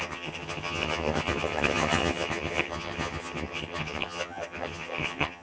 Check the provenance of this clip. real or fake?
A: fake